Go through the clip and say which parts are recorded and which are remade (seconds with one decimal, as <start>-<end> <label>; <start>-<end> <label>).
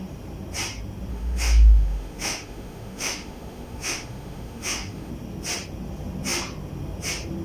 0.0-1.1 recorded; 1.1-5.1 remade; 5.1-7.4 recorded